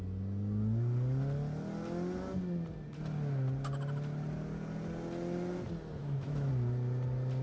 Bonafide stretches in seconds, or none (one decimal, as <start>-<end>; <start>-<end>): 0.0-6.0; 6.5-7.4